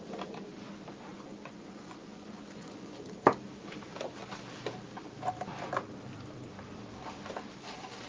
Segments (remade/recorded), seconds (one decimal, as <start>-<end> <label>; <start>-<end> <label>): 0.0-1.1 recorded; 1.1-3.0 remade; 3.0-8.1 recorded